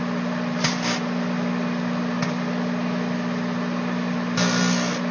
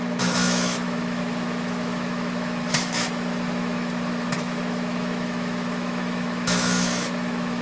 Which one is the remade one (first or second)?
second